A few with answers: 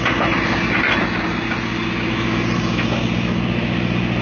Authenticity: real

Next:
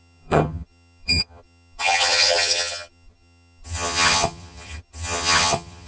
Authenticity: fake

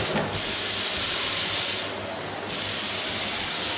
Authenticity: real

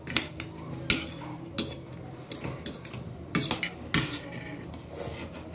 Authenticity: real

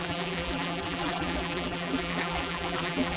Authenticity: fake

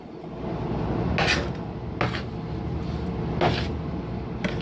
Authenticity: real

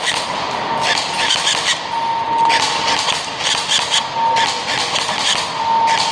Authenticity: real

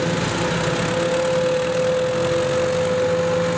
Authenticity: real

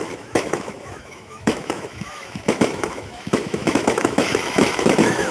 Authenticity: fake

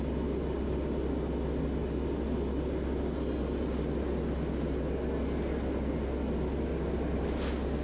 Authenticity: real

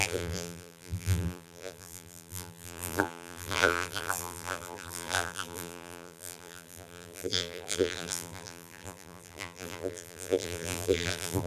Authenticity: fake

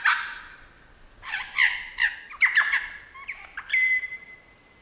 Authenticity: real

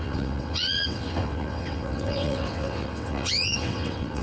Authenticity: fake